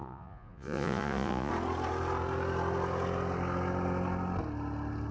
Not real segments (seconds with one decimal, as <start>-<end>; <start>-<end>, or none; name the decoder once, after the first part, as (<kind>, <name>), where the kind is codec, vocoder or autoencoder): 0.0-1.5 (vocoder, Vocos)